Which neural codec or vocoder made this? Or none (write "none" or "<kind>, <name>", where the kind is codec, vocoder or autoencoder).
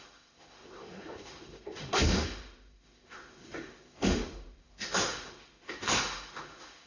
autoencoder, DAC-VAE